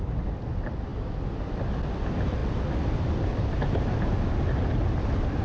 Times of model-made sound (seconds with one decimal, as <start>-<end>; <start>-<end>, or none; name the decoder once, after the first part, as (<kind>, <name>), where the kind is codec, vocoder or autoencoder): none